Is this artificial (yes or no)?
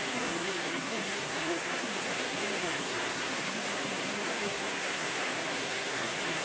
yes